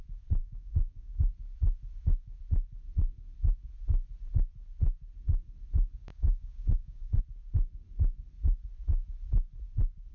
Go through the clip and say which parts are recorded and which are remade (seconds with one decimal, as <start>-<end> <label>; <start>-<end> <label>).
0.0-0.4 recorded; 0.4-1.3 remade; 1.3-6.0 recorded; 6.0-7.2 remade; 7.2-10.1 recorded